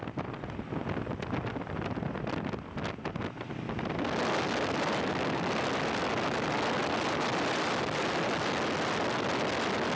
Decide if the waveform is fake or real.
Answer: real